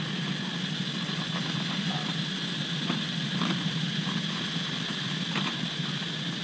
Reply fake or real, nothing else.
fake